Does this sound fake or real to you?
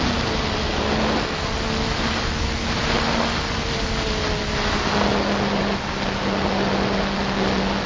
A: real